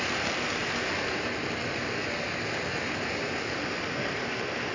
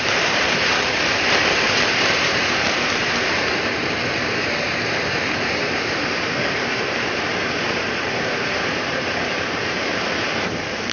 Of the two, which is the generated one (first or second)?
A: second